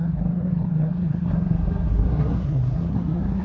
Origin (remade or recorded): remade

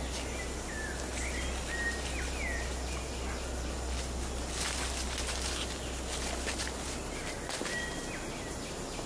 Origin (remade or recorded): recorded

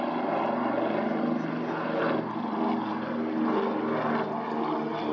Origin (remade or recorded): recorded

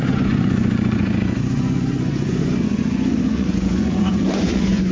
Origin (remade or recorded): remade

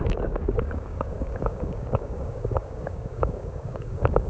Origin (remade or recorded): remade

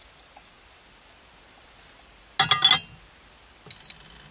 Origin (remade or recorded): recorded